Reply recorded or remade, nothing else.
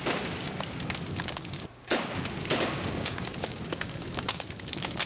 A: remade